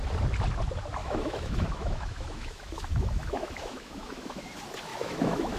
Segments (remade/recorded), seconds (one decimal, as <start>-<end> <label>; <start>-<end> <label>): 0.0-1.0 recorded; 1.0-4.4 remade; 4.4-4.9 recorded; 4.9-5.6 remade